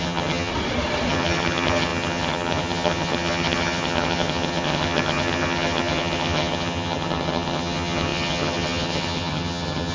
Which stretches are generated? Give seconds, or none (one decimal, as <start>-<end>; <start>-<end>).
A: 0.0-0.5; 1.1-9.9